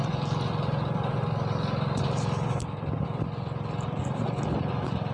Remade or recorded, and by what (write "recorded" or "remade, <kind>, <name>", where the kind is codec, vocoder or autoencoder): remade, vocoder, BigVGAN v2